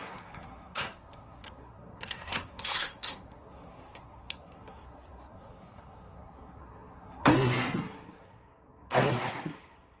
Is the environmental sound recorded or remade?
remade